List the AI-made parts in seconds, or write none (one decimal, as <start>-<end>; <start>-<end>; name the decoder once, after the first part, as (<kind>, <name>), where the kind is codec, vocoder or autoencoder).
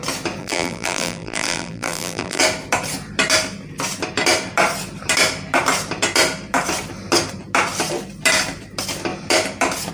0.4-2.4 (vocoder, BigVGAN v2)